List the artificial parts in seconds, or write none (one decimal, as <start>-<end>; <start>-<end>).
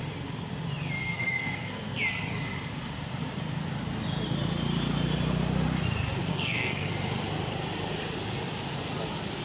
1.0-2.0; 6.3-6.9